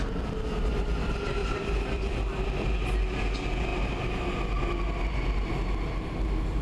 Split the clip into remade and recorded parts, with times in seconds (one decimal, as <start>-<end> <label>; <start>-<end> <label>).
0.0-1.4 recorded; 1.4-2.2 remade; 2.2-6.6 recorded